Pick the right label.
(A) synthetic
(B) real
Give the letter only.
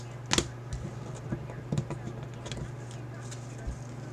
B